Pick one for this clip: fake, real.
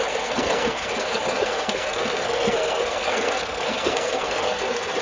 fake